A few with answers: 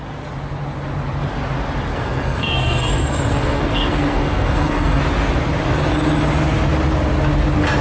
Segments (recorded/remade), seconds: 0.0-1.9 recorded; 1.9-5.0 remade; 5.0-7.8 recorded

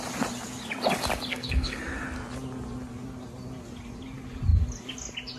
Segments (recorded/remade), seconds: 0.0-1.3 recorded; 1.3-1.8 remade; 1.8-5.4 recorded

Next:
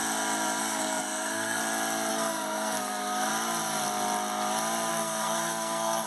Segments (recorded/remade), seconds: 0.0-0.6 recorded; 0.6-1.6 remade; 1.6-2.1 recorded; 2.1-3.3 remade; 3.3-4.9 recorded; 4.9-6.1 remade

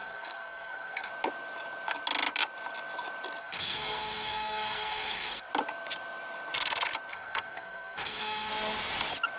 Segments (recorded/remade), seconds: 0.0-1.1 remade; 1.1-3.4 recorded; 3.4-5.5 remade; 5.5-7.1 recorded; 7.1-8.5 remade; 8.5-9.4 recorded

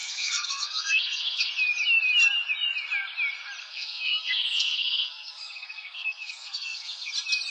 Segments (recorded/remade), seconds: 0.0-1.5 remade; 1.5-3.6 recorded; 3.6-7.1 remade; 7.1-7.5 recorded

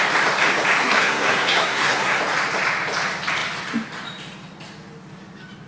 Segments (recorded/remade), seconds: 0.0-0.8 recorded; 0.8-2.2 remade; 2.2-5.7 recorded